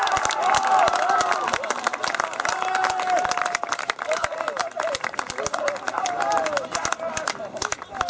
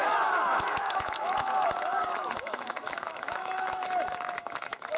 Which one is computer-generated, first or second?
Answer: second